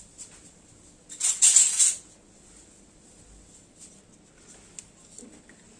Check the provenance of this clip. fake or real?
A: real